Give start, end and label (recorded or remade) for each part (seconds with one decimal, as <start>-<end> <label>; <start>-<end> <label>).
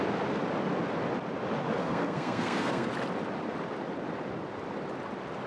0.0-1.8 recorded; 1.8-2.9 remade; 2.9-5.5 recorded